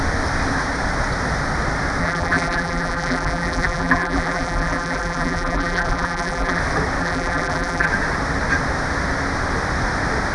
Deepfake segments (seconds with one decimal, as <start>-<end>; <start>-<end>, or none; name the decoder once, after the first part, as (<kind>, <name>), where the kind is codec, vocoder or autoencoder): 2.0-6.6 (vocoder, BigVGAN v2); 7.0-7.9